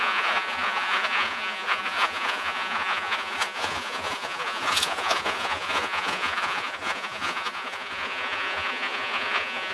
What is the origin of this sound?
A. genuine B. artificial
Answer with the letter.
B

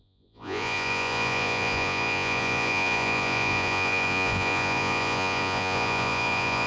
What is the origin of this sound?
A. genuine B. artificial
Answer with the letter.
B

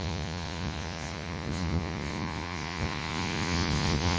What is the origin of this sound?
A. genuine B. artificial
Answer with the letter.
B